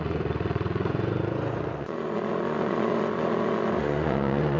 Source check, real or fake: fake